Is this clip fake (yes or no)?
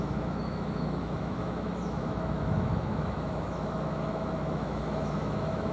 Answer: yes